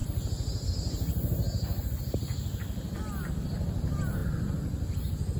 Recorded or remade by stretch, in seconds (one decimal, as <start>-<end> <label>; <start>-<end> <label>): 0.0-5.4 recorded